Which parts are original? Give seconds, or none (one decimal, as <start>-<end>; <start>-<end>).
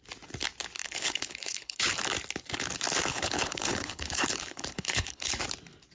0.0-0.8; 2.0-3.1; 5.4-5.9